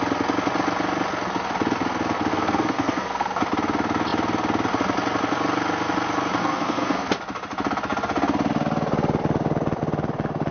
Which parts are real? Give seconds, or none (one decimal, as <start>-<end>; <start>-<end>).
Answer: 0.0-2.3; 3.4-6.4; 7.1-10.5